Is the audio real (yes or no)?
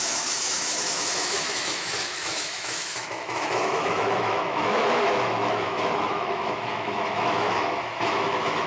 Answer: no